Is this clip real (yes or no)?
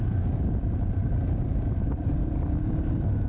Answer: yes